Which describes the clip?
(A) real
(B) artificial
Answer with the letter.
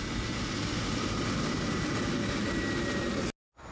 A